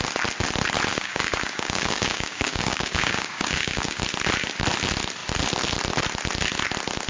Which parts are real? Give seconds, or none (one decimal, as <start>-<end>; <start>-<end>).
0.0-0.9; 4.0-7.1